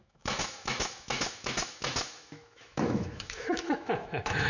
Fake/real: fake